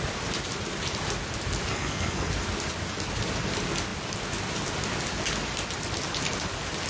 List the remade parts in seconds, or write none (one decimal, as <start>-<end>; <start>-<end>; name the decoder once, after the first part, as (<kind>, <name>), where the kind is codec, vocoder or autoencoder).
1.7-2.3 (codec, SNAC)